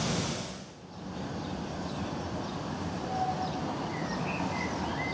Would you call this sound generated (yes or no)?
no